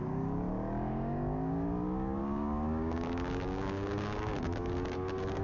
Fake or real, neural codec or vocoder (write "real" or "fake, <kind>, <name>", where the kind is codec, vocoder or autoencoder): fake, codec, DAC